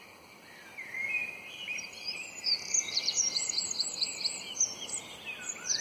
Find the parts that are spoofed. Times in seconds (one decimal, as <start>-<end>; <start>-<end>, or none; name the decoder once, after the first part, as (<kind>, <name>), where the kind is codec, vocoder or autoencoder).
none